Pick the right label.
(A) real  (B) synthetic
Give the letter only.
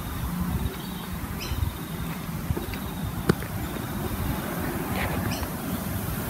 A